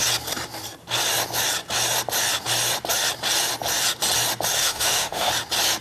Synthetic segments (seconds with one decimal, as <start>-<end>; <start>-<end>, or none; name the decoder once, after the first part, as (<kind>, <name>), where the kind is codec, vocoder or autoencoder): 4.6-5.3 (autoencoder, DAC-VAE)